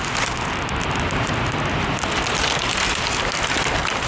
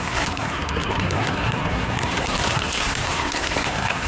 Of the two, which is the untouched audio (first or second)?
first